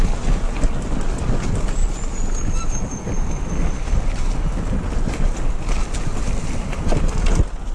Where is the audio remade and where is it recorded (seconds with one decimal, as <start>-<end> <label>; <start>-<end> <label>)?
0.0-7.7 recorded